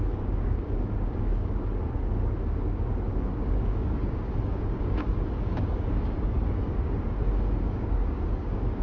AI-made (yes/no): yes